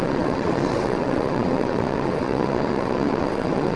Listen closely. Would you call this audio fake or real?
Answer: fake